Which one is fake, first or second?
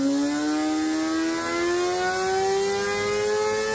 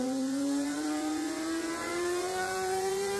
second